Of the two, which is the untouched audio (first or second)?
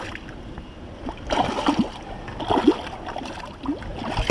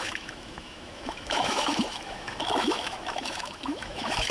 first